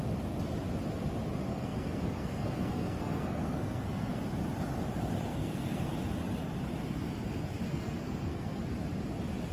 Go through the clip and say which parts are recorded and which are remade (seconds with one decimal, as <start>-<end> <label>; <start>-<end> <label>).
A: 0.0-1.5 recorded; 1.5-4.2 remade; 4.2-5.3 recorded; 5.3-5.9 remade; 5.9-7.7 recorded; 7.7-8.6 remade; 8.6-9.5 recorded